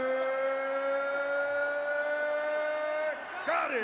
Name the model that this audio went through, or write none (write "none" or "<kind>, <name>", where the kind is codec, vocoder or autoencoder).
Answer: none